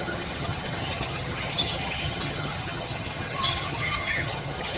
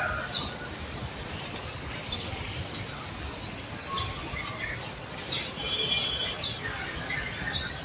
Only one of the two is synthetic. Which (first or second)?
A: first